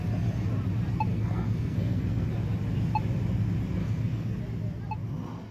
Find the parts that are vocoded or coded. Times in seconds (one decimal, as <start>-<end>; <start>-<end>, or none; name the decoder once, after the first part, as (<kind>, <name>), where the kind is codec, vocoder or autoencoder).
1.1-2.3 (codec, SNAC); 3.8-4.4